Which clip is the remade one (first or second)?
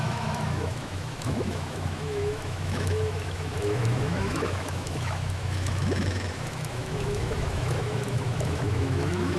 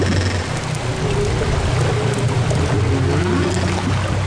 first